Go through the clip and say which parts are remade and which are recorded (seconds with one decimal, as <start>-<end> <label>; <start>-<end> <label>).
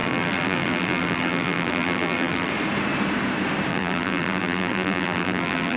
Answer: 0.0-2.5 remade; 2.5-3.7 recorded; 3.7-5.8 remade